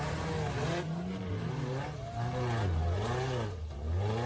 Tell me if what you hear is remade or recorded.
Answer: recorded